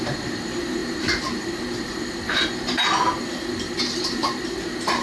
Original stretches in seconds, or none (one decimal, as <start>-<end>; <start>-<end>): none